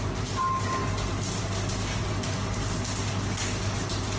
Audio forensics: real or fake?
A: real